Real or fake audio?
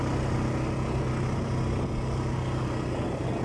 real